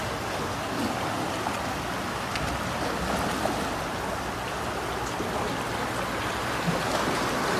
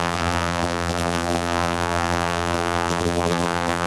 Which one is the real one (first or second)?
first